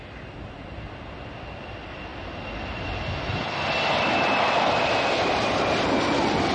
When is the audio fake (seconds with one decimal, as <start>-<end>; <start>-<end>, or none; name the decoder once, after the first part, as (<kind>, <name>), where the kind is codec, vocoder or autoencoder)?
none